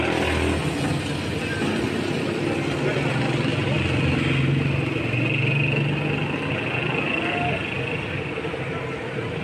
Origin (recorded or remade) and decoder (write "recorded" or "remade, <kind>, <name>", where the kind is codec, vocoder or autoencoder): recorded